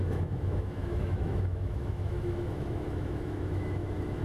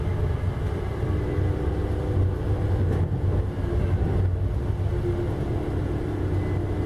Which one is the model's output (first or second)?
first